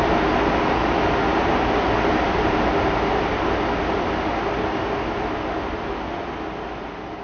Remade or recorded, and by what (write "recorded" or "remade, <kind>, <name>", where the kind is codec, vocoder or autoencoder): recorded